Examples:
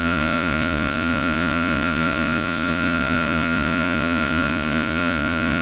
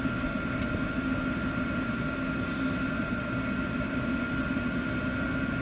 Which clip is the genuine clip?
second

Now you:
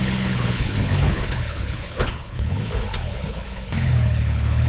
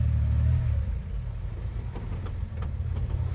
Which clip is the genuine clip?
second